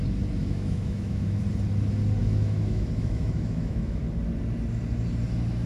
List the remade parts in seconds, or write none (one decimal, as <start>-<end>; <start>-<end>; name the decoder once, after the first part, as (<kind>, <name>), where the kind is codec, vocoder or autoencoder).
0.4-1.4 (autoencoder, DAC-VAE); 2.2-4.0